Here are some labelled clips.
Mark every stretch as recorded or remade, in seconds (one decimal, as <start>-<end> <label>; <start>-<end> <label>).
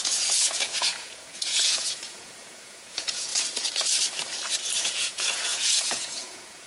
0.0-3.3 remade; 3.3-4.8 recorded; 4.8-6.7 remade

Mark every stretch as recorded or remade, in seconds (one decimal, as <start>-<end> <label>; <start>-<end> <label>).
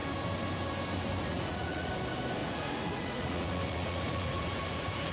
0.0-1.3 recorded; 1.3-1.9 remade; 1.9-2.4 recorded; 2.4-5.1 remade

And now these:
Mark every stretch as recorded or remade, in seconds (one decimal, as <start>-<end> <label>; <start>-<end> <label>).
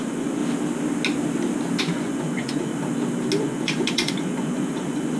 0.0-0.4 remade; 0.4-1.8 recorded; 1.8-2.7 remade; 2.7-3.4 recorded; 3.4-5.2 remade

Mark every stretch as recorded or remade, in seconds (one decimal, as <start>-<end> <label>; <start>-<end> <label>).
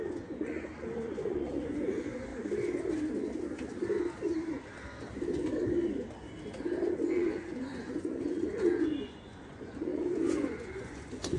0.0-2.3 remade; 2.3-7.1 recorded; 7.1-11.4 remade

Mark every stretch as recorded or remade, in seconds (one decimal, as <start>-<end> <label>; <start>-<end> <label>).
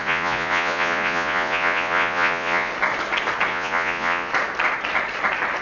0.0-2.7 remade; 2.7-3.5 recorded; 3.5-4.3 remade; 4.3-5.6 recorded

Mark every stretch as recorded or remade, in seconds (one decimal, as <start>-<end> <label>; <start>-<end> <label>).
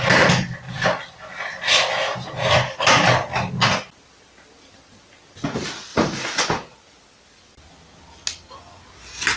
0.0-5.9 recorded; 5.9-6.4 remade; 6.4-9.4 recorded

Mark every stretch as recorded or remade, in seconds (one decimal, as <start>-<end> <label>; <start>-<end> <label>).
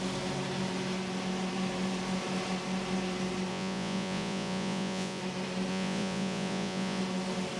0.0-3.5 recorded; 3.5-5.2 remade; 5.2-5.7 recorded; 5.7-7.0 remade; 7.0-7.6 recorded